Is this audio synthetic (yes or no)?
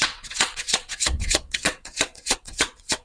yes